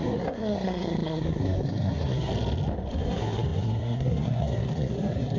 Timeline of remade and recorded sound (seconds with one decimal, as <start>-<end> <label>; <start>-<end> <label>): 0.0-2.3 remade; 2.3-2.9 recorded; 2.9-5.4 remade